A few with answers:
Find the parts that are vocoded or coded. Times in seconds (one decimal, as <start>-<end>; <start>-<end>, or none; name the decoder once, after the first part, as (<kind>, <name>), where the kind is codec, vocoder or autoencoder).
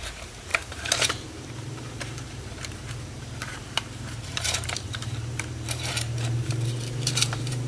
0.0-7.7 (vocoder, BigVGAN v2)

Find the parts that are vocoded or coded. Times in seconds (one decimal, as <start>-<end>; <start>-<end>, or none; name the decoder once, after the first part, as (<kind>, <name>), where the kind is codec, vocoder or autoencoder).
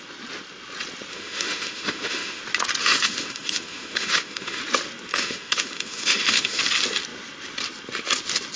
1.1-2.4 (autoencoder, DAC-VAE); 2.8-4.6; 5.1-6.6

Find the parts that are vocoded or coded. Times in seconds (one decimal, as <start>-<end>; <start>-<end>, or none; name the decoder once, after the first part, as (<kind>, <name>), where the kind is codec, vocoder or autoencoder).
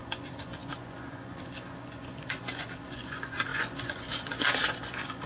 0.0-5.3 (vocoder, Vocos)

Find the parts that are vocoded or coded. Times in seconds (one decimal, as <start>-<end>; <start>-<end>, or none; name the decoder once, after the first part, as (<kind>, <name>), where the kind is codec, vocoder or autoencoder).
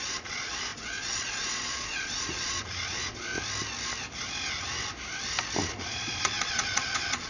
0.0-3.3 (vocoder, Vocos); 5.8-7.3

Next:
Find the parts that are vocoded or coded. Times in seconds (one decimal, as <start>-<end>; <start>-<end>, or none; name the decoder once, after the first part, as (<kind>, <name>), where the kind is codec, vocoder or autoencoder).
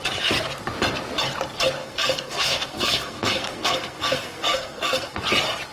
1.8-5.2 (codec, SNAC)